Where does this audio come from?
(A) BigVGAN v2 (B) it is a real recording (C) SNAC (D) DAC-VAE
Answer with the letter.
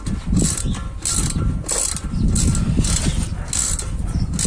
B